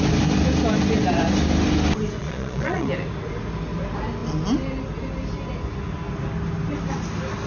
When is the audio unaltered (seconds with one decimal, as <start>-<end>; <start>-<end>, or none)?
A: 0.0-2.2; 2.9-7.5